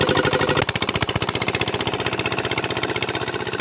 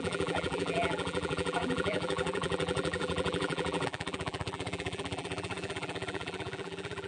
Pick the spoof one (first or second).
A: second